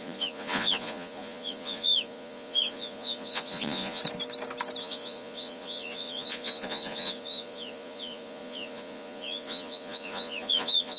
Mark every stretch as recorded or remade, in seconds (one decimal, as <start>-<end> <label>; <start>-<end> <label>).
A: 0.0-4.0 remade; 4.0-4.8 recorded; 4.8-11.0 remade